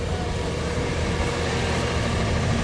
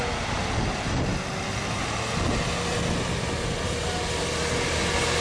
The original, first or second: second